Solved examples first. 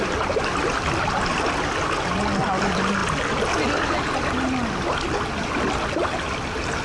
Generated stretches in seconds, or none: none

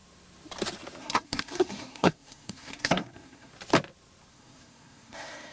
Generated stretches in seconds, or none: 1.0-3.5 (codec, SNAC); 4.3-5.5

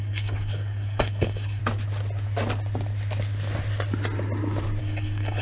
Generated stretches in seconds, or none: 0.0-1.6 (codec, DAC); 4.8-5.4

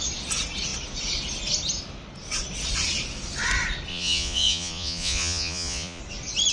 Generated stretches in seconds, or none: 3.9-6.0 (vocoder, Vocos)